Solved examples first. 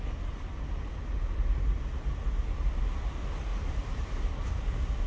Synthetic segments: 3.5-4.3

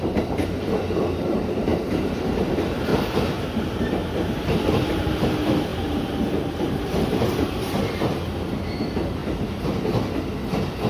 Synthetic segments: 0.0-2.9; 3.4-9.2

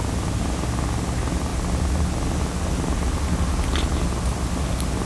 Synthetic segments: none

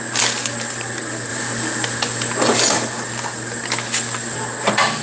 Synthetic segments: none

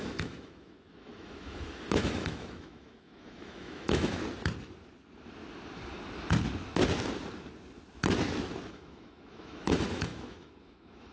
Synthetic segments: 0.0-4.2; 8.7-11.1

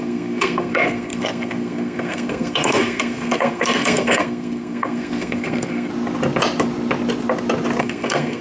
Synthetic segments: 0.0-5.9; 7.8-8.4